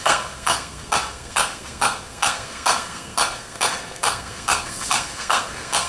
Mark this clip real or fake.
fake